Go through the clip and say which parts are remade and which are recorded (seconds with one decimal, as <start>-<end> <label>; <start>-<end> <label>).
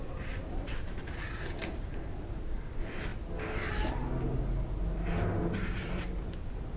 0.0-6.8 recorded